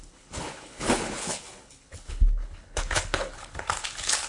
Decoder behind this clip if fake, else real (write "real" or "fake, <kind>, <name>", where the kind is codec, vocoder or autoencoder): fake, codec, HILCodec